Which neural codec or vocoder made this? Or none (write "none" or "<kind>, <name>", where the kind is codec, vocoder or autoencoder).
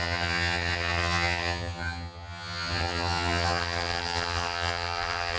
vocoder, HiFi-GAN